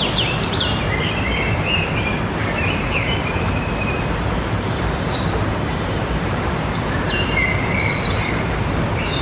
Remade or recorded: remade